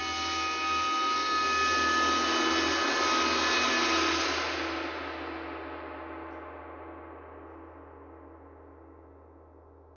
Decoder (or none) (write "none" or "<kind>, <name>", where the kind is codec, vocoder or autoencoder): none